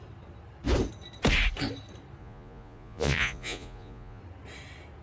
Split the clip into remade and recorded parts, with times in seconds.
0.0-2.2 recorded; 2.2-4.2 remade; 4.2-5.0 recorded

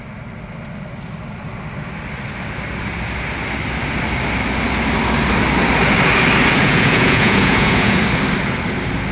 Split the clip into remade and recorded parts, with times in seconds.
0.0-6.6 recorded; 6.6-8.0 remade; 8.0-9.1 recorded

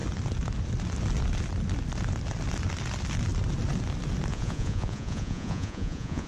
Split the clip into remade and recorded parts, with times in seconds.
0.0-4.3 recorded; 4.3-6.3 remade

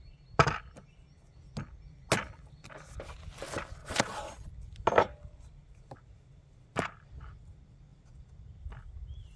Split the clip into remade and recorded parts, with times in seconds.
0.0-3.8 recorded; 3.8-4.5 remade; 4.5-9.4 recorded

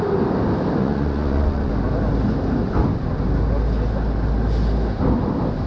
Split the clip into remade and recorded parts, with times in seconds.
0.0-0.8 recorded; 0.8-1.7 remade; 1.7-5.7 recorded

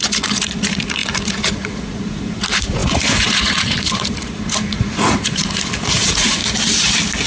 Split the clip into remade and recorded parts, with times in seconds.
0.0-6.4 remade; 6.4-7.3 recorded

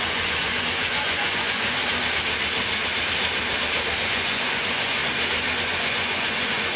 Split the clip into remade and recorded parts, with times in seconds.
0.0-1.8 remade; 1.8-4.0 recorded; 4.0-5.0 remade; 5.0-5.6 recorded; 5.6-6.8 remade

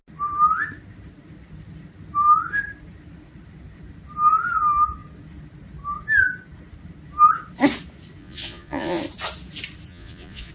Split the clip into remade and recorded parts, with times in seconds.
0.0-8.2 recorded; 8.2-9.0 remade; 9.0-9.9 recorded; 9.9-10.5 remade